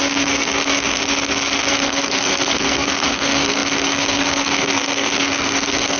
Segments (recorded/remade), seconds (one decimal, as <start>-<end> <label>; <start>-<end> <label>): 0.0-1.0 remade; 1.0-1.7 recorded; 1.7-6.0 remade